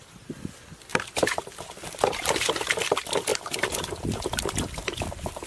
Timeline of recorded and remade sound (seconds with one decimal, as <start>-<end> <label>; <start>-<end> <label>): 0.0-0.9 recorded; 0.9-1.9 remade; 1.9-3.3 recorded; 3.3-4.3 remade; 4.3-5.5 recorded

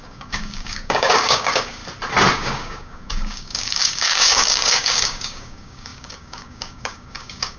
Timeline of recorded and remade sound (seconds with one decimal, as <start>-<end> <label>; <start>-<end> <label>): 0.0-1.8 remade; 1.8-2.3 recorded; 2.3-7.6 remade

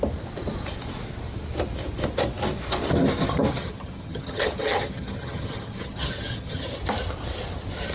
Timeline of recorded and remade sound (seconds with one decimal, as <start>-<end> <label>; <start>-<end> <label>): 0.0-3.5 recorded; 3.5-6.8 remade; 6.8-7.9 recorded

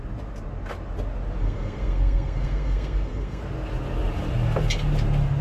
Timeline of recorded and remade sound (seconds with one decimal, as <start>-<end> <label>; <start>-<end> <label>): 0.0-1.4 recorded; 1.4-3.4 remade; 3.4-5.4 recorded

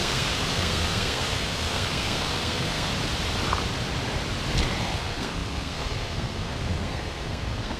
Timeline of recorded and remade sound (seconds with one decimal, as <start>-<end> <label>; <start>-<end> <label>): 0.0-2.9 remade; 2.9-4.8 recorded; 4.8-7.8 remade

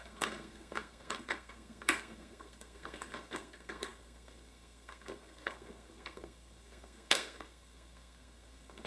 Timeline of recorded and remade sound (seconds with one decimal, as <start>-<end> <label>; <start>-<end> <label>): 0.0-8.9 remade

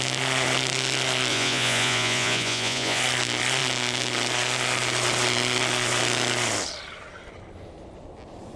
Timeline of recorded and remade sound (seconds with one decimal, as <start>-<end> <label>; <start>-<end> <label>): 0.0-1.3 recorded; 1.3-3.0 remade; 3.0-8.6 recorded

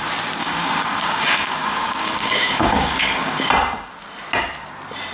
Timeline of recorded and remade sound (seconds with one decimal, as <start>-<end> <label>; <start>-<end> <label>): 0.0-0.4 recorded; 0.4-3.5 remade; 3.5-5.1 recorded